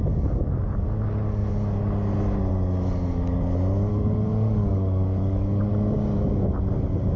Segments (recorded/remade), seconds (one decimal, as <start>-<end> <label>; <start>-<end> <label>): 0.0-3.9 recorded; 3.9-5.7 remade; 5.7-7.2 recorded